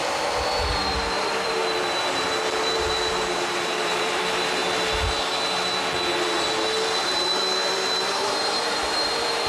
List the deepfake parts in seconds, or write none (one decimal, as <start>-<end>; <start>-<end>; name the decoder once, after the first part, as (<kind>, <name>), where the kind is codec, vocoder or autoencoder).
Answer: 0.7-1.6 (vocoder, BigVGAN v2); 2.6-4.6; 7.0-9.5